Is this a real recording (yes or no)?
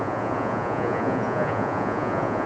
no